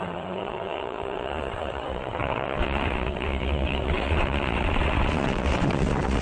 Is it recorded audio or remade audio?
remade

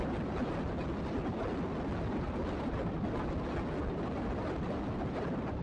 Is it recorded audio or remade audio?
recorded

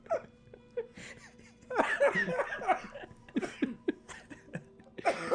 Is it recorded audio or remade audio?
recorded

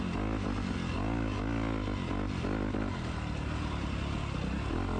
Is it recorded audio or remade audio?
recorded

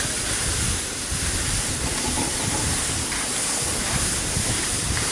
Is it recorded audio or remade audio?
recorded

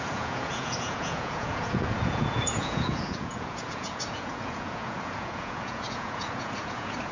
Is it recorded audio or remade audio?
remade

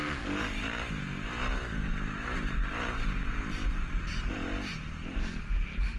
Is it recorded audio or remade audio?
remade